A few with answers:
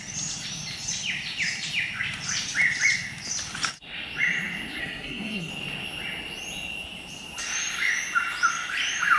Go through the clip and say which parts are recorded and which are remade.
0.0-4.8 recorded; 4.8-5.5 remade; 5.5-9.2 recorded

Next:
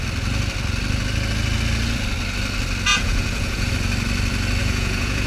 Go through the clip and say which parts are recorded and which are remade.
0.0-2.9 recorded; 2.9-3.7 remade; 3.7-4.6 recorded; 4.6-5.3 remade

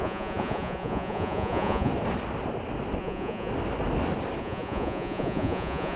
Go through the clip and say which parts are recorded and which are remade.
0.0-1.9 remade; 1.9-3.0 recorded; 3.0-3.5 remade; 3.5-4.4 recorded; 4.4-6.0 remade

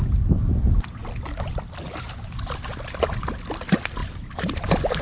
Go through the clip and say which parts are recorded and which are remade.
0.0-4.0 recorded; 4.0-5.0 remade

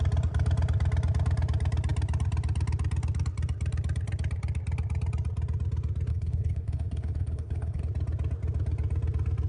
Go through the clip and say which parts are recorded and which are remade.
0.0-6.1 recorded; 6.1-7.8 remade; 7.8-9.5 recorded